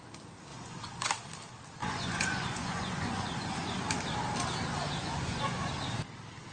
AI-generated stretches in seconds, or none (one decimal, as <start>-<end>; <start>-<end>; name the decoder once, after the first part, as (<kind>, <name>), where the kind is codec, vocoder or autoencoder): 0.5-1.1 (vocoder, Vocos); 1.8-3.8; 5.0-5.7